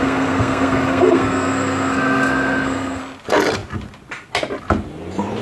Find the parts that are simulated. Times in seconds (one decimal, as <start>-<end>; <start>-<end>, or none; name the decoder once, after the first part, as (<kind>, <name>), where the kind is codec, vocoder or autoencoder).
0.0-3.0 (codec, SNAC)